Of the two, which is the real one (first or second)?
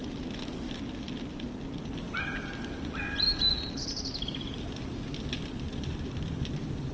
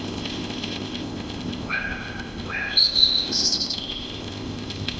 first